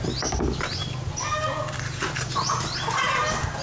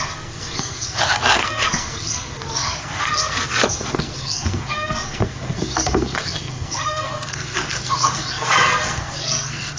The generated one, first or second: second